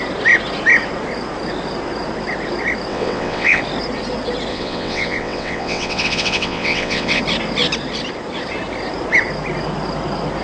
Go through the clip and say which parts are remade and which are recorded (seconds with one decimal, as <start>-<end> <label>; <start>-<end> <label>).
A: 0.0-2.9 recorded; 2.9-3.6 remade; 3.6-4.5 recorded; 4.5-7.2 remade; 7.2-10.4 recorded